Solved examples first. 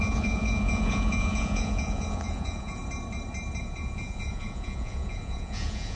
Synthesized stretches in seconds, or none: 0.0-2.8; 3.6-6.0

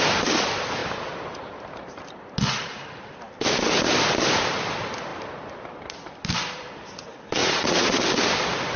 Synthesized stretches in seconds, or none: 7.4-8.0

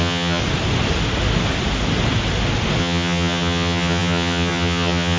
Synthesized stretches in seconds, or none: 0.0-0.4; 2.8-5.2

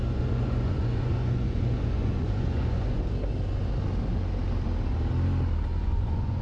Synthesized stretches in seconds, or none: 0.0-3.0; 5.7-6.4

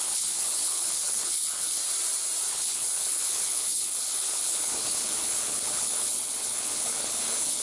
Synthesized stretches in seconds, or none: 0.0-1.8; 2.5-7.6

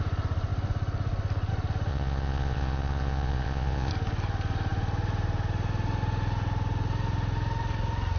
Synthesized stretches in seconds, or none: 1.9-3.9